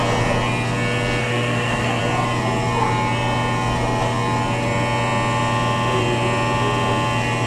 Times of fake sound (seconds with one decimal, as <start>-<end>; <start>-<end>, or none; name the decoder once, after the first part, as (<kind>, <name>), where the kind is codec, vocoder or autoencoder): 1.2-2.0 (codec, SNAC)